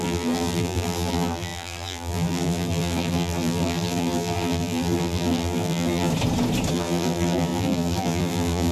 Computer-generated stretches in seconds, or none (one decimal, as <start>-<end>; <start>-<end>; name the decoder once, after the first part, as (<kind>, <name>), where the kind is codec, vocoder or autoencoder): 0.0-6.1 (vocoder, BigVGAN v2); 6.7-8.7